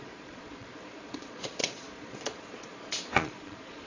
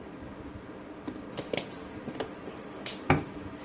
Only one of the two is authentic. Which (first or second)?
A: second